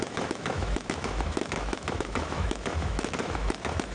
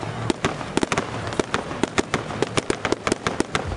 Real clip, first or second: second